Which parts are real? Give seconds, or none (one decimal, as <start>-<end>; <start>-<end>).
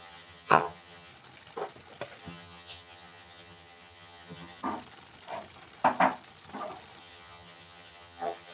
1.1-2.2; 4.6-7.0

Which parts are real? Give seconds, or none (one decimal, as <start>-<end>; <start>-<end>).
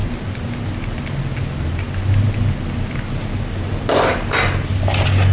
0.0-5.3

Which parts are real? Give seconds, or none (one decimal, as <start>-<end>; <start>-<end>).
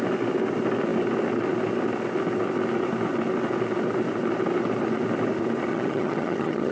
0.0-5.7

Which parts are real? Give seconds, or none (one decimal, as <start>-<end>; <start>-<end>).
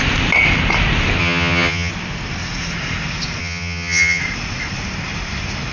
0.0-1.2; 1.9-3.4; 4.2-5.7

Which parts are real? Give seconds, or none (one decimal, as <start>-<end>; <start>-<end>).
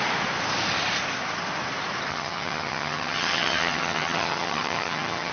0.0-2.1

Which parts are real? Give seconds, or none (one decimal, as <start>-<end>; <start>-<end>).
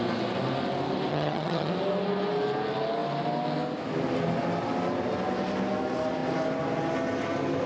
0.0-1.1; 1.7-7.7